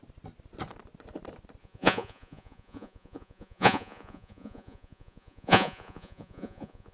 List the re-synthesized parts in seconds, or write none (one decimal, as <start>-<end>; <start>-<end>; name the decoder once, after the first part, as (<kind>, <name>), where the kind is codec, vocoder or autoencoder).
1.6-6.9 (vocoder, Vocos)